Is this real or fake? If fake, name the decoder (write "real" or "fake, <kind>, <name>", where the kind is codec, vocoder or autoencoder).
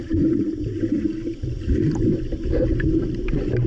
real